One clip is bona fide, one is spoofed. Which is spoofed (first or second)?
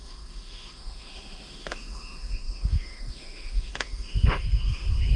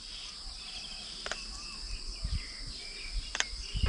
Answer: first